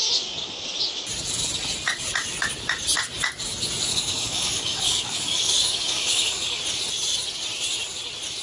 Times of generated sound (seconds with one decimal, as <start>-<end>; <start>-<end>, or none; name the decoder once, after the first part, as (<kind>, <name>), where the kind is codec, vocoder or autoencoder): 3.9-6.6 (codec, DAC)